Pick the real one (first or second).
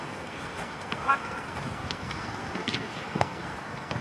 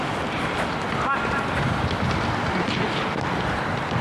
second